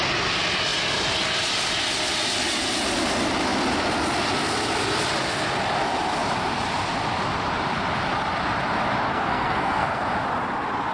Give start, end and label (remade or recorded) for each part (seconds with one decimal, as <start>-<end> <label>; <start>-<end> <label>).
0.0-9.1 recorded; 9.1-10.0 remade; 10.0-10.9 recorded